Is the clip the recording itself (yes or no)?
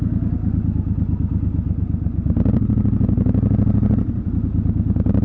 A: yes